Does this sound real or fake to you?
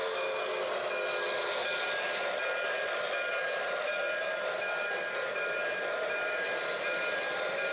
real